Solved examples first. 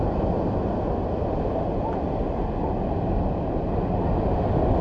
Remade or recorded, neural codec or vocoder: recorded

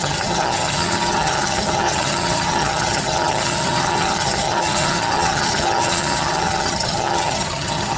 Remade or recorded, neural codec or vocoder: remade, vocoder, HiFi-GAN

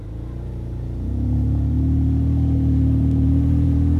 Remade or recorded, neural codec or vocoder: remade, vocoder, BigVGAN v2